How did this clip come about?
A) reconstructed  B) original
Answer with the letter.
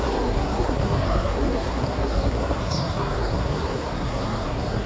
A